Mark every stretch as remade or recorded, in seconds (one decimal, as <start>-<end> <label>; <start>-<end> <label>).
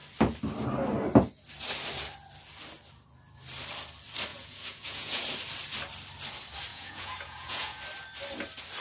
0.0-4.3 recorded; 4.3-5.2 remade; 5.2-6.7 recorded; 6.7-7.8 remade; 7.8-8.8 recorded